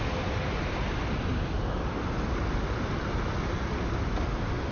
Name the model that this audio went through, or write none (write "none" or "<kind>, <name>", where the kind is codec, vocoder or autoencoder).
none